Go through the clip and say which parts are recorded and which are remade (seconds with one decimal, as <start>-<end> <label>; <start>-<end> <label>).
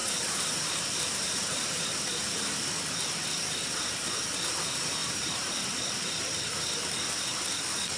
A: 0.0-2.6 remade; 2.6-5.0 recorded; 5.0-5.6 remade; 5.6-8.0 recorded